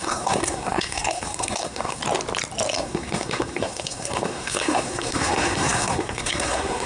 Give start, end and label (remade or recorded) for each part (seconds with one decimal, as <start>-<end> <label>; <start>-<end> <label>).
0.0-2.0 remade; 2.0-2.7 recorded; 2.7-6.9 remade